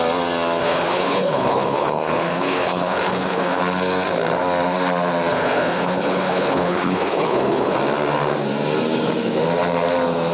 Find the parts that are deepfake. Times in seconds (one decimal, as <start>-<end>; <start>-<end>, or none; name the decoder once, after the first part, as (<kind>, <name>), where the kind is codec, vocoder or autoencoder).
0.6-3.6 (codec, HILCodec); 5.3-7.8